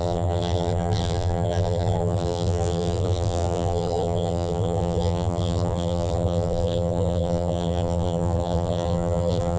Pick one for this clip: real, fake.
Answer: fake